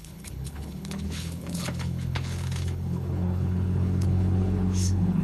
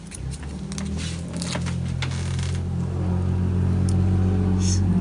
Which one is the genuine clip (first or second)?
second